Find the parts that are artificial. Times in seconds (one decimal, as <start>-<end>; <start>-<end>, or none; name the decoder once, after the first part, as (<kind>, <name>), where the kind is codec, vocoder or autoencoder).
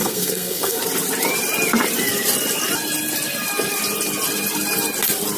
0.0-0.8 (codec, SNAC)